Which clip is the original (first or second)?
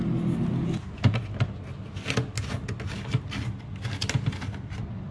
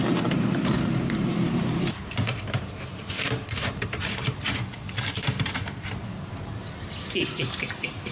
first